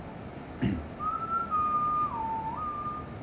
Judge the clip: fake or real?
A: real